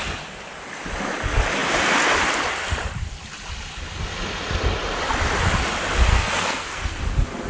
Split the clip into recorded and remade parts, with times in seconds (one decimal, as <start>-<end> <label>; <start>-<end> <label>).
0.0-6.1 recorded; 6.1-7.0 remade; 7.0-7.5 recorded